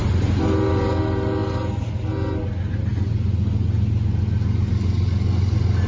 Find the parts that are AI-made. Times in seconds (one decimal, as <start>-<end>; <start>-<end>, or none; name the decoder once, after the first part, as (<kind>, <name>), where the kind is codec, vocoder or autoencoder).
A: none